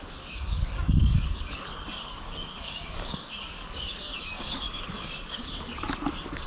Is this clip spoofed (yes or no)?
yes